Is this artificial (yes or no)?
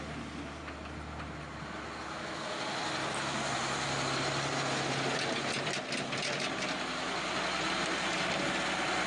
no